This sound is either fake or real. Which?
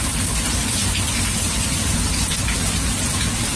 real